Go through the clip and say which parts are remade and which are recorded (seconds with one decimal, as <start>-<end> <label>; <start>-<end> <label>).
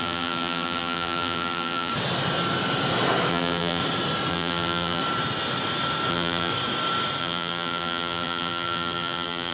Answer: 0.0-1.9 remade; 1.9-3.3 recorded; 3.3-3.8 remade; 3.8-4.3 recorded; 4.3-5.0 remade; 5.0-6.1 recorded; 6.1-6.5 remade; 6.5-7.2 recorded; 7.2-9.5 remade